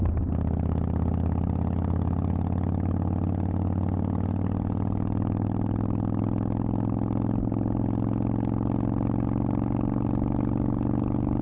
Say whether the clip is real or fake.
real